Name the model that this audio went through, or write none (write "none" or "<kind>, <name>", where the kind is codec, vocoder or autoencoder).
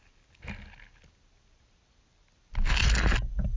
none